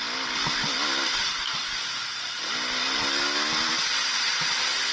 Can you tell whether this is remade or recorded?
recorded